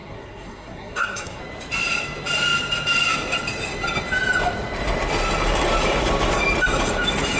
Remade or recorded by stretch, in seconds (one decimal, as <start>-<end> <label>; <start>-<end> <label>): 0.0-1.4 remade; 1.4-7.4 recorded